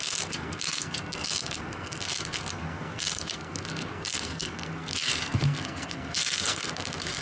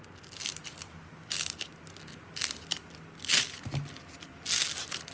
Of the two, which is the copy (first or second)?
first